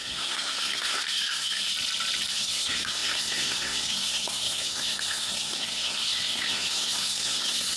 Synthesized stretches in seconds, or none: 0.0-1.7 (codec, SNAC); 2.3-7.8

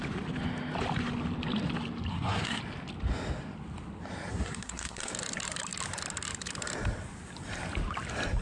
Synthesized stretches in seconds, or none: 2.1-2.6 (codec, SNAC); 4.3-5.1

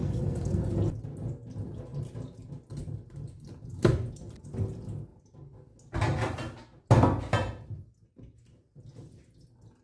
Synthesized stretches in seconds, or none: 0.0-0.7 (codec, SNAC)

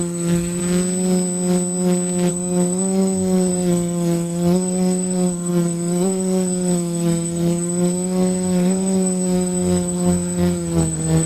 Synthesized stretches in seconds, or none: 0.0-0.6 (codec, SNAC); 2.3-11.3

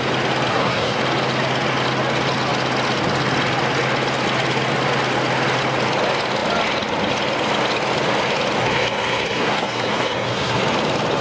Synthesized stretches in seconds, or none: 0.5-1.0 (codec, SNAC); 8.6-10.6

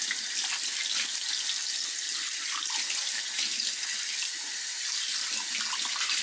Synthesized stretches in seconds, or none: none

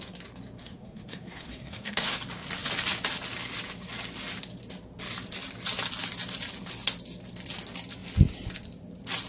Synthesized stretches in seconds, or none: 0.6-2.2 (codec, SNAC)